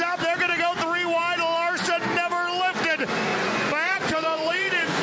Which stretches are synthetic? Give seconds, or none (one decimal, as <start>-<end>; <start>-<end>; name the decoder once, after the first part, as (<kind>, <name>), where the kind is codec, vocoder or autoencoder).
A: 3.3-5.0 (vocoder, Vocos)